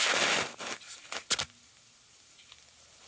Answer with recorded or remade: recorded